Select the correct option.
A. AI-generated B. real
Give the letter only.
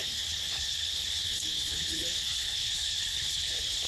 A